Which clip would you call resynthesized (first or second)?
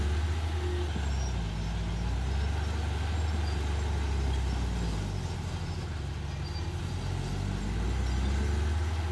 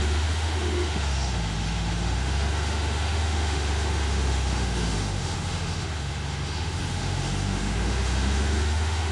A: second